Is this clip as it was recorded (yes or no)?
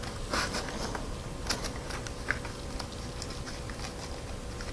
yes